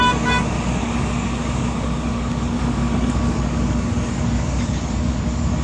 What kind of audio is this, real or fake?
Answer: fake